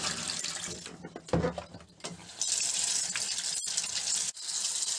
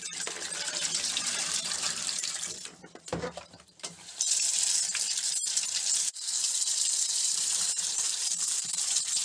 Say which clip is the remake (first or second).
second